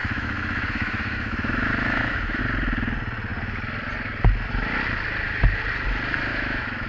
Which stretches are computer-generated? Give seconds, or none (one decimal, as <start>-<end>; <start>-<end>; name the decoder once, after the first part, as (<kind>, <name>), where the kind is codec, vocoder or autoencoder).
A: 0.0-2.4 (autoencoder, DAC-VAE); 6.3-6.9